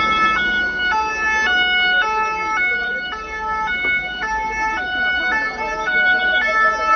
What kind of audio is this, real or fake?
real